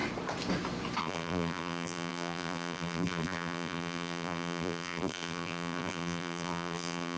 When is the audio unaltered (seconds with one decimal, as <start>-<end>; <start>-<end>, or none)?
0.0-1.0